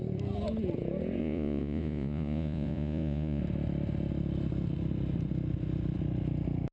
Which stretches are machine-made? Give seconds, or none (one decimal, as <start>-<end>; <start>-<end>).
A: 1.2-3.4